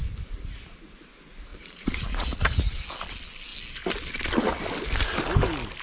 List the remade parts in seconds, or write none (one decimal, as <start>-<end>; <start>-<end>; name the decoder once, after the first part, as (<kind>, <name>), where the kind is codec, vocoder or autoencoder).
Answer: 1.5-2.8 (vocoder, Vocos)